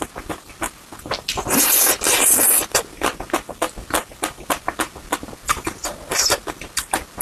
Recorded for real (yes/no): yes